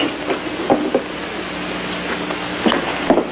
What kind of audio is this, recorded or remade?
recorded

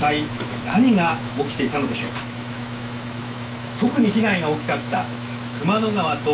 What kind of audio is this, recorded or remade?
remade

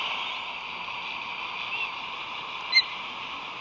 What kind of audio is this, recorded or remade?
recorded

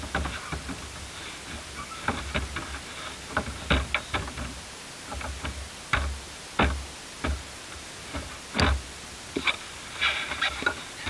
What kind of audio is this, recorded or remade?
recorded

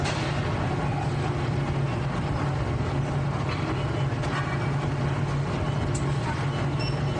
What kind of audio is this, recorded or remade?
recorded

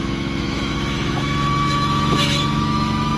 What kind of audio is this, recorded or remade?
remade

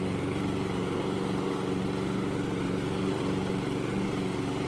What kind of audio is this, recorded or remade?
recorded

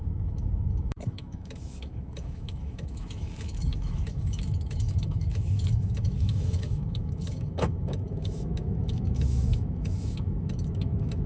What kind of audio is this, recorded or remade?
remade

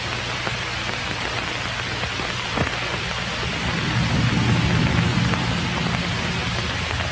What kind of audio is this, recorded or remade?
recorded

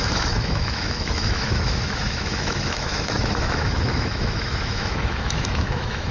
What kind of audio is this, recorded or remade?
remade